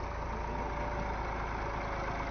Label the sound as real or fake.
real